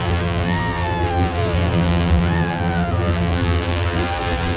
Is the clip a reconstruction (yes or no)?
yes